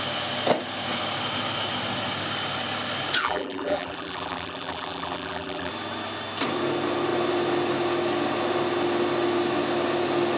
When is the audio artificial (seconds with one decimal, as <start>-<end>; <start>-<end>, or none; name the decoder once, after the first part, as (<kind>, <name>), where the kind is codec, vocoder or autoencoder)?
3.2-5.7 (vocoder, BigVGAN v2)